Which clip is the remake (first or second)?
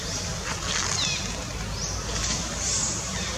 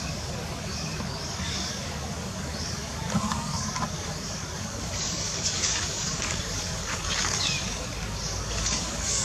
second